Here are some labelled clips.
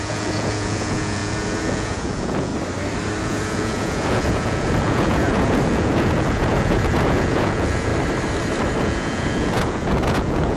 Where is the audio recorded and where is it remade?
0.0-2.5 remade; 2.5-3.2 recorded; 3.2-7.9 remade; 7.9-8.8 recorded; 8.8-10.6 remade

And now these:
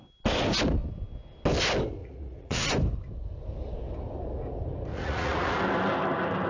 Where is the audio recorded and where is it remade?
0.0-2.0 recorded; 2.0-2.6 remade; 2.6-4.9 recorded; 4.9-5.6 remade; 5.6-6.5 recorded

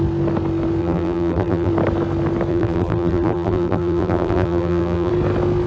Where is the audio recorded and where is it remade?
0.0-0.8 recorded; 0.8-1.7 remade; 1.7-2.5 recorded; 2.5-5.1 remade; 5.1-5.7 recorded

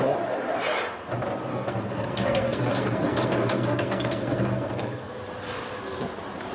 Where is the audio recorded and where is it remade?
0.0-1.5 recorded; 1.5-5.1 remade; 5.1-6.5 recorded

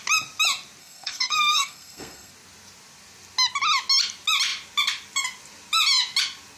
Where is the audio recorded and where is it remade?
0.0-0.8 recorded; 0.8-2.3 remade; 2.3-6.6 recorded

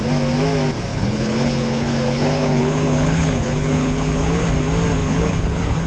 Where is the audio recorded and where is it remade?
0.0-0.9 recorded; 0.9-4.4 remade; 4.4-5.0 recorded; 5.0-5.9 remade